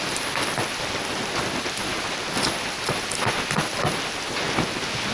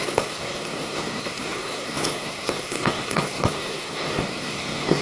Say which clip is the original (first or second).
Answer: first